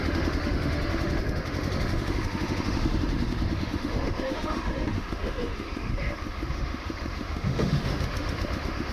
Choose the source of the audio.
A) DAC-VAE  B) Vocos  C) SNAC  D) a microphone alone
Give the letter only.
A